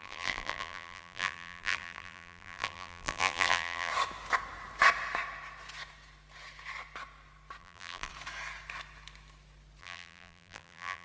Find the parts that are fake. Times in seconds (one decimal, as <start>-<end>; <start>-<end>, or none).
0.0-3.9; 7.6-8.1; 9.8-11.0